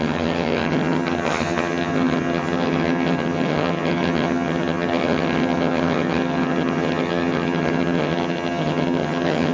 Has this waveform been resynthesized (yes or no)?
yes